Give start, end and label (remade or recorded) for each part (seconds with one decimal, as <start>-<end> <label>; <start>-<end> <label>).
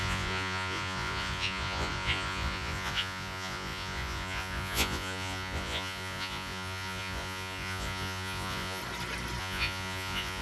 0.0-8.8 remade; 8.8-9.4 recorded; 9.4-10.4 remade